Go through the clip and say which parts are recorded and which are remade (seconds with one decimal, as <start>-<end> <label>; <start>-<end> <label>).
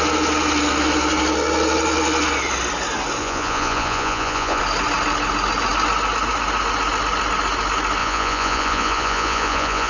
0.0-3.2 recorded; 3.2-4.6 remade; 4.6-8.0 recorded; 8.0-9.9 remade